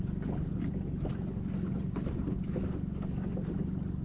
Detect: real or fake real